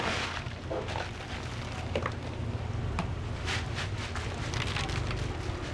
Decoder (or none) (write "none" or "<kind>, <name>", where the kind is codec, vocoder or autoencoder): none